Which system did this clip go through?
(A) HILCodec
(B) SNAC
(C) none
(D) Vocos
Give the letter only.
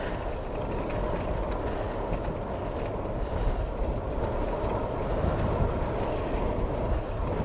C